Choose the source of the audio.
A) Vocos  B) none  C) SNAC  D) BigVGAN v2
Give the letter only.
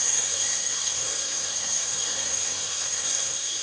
C